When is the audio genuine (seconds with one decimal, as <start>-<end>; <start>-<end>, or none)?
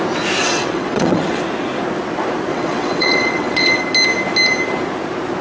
0.0-0.4; 1.4-2.5; 3.8-5.4